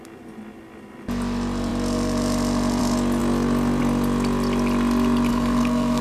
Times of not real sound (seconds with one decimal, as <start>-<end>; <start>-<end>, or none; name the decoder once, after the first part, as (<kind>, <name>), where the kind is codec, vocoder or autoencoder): 5.3-6.0 (codec, SNAC)